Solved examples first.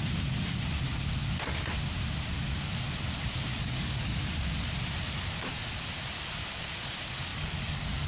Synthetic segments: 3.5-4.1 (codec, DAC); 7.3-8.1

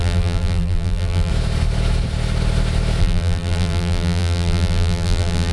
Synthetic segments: 0.0-1.3 (vocoder, BigVGAN v2); 3.0-5.5

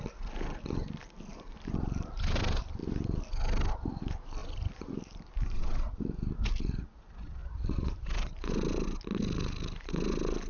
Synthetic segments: 2.8-4.0 (vocoder, BigVGAN v2); 7.4-8.5

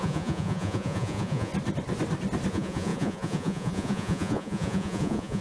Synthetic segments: 0.0-1.5 (vocoder, Vocos); 2.5-5.4